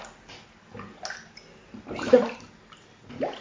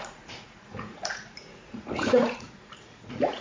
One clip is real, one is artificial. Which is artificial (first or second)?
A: second